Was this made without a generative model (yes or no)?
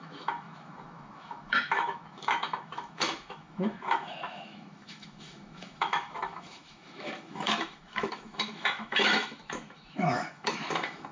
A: no